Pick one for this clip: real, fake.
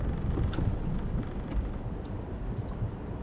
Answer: real